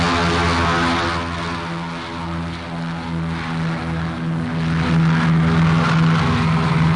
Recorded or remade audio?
recorded